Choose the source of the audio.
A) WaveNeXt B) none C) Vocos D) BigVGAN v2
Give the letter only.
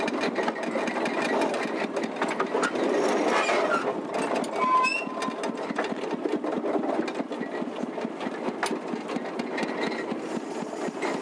B